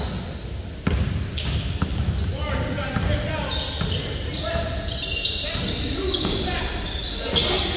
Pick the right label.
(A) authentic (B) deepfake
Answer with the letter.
A